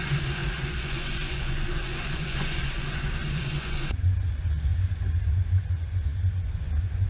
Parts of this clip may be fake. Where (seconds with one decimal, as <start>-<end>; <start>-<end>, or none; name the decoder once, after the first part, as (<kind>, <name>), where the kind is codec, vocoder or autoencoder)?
0.0-7.1 (vocoder, Vocos)